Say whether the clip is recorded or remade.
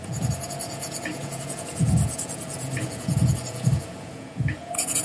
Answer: remade